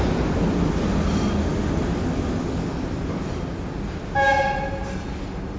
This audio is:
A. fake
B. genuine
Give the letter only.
B